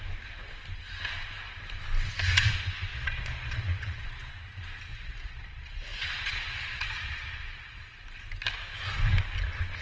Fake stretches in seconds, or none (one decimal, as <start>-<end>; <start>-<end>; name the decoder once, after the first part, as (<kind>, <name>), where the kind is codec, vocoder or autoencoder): 2.9-4.3 (vocoder, Vocos); 4.9-8.0